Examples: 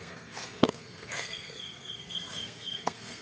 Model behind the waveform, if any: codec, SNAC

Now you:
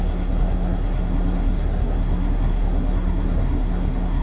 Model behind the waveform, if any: codec, SNAC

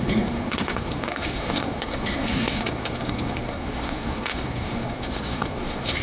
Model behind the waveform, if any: codec, SNAC